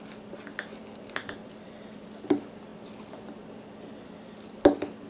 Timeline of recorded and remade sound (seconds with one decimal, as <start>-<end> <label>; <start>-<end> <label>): 0.0-5.1 recorded